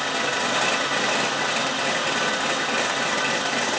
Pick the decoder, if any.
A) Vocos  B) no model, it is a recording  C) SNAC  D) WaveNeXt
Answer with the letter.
B